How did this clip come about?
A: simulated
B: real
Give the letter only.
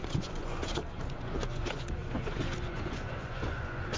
A